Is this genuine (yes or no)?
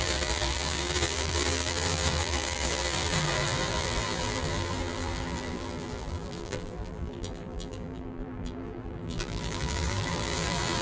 no